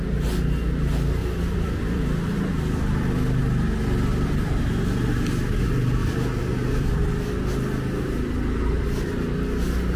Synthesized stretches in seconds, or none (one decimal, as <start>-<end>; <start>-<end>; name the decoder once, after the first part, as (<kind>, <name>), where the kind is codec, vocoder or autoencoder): 1.2-2.5 (vocoder, BigVGAN v2); 4.1-4.6